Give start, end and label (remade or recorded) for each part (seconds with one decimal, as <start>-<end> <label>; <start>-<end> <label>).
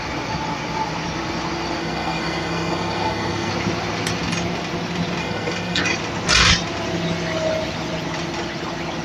0.0-1.8 recorded; 1.8-3.5 remade; 3.5-5.2 recorded; 5.2-5.8 remade; 5.8-9.0 recorded